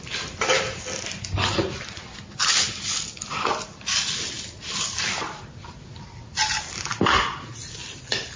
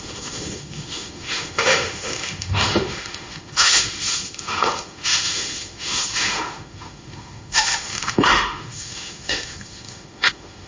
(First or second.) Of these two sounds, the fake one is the second